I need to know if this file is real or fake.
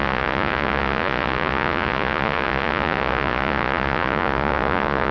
fake